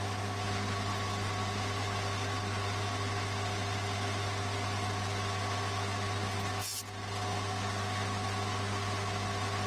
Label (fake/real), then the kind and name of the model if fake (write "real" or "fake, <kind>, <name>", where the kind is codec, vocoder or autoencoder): real